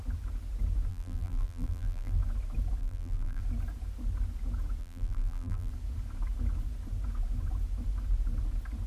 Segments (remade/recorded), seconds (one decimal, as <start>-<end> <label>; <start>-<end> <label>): 0.0-0.9 recorded; 0.9-2.2 remade; 2.2-2.8 recorded; 2.8-3.4 remade; 3.4-4.8 recorded; 4.8-5.7 remade; 5.7-8.9 recorded

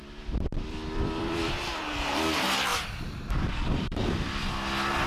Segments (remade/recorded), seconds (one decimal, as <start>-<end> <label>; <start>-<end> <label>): 0.0-5.1 remade

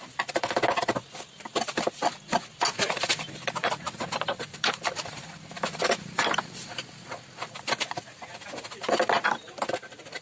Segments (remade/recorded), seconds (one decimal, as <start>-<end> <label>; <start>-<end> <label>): 0.0-3.6 recorded; 3.6-6.7 remade; 6.7-10.2 recorded

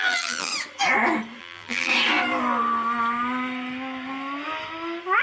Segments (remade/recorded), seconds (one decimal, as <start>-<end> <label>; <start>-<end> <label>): 0.0-0.5 remade; 0.5-1.4 recorded; 1.4-1.9 remade; 1.9-5.2 recorded

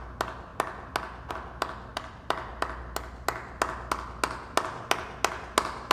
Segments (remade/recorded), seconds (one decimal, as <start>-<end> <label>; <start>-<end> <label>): 0.0-1.9 recorded; 1.9-2.5 remade; 2.5-5.9 recorded